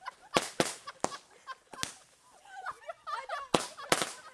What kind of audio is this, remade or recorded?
recorded